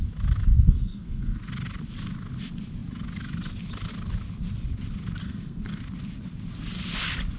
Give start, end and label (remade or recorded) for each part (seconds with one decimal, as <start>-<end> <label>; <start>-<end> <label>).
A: 0.0-0.5 recorded; 0.5-1.5 remade; 1.5-5.2 recorded; 5.2-5.8 remade; 5.8-7.4 recorded